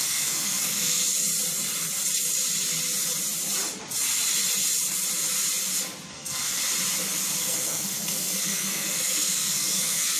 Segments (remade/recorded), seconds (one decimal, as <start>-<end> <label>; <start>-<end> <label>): 0.0-1.0 remade; 1.0-6.1 recorded; 6.1-6.6 remade; 6.6-7.4 recorded; 7.4-10.2 remade